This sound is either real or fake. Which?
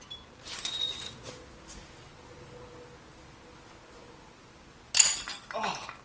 real